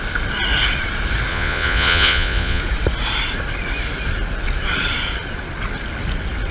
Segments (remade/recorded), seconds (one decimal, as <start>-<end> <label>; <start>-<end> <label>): 0.0-1.3 recorded; 1.3-2.6 remade; 2.6-6.5 recorded